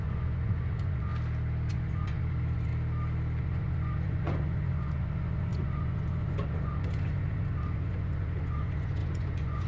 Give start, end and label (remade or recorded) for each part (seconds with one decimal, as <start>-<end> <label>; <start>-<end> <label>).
0.0-1.1 remade; 1.1-1.7 recorded; 1.7-2.7 remade; 2.7-3.4 recorded; 3.4-9.7 remade